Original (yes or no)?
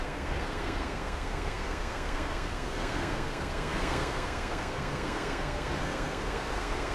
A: no